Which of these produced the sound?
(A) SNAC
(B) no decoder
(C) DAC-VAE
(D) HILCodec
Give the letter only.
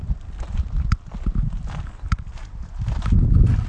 B